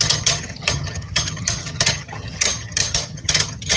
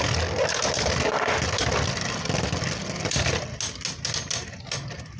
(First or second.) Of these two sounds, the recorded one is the second